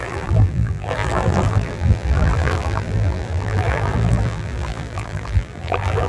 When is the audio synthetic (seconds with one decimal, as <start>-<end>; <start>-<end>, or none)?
0.0-6.1